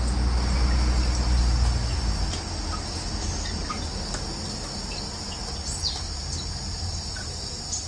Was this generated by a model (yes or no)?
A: no